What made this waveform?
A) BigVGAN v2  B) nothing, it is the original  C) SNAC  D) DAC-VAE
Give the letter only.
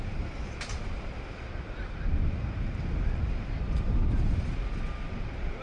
A